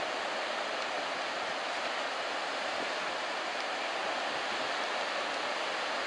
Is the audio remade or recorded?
recorded